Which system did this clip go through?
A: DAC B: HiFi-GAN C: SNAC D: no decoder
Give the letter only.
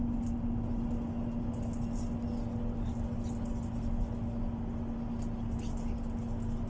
D